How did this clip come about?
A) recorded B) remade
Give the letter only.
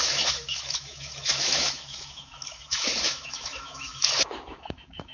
B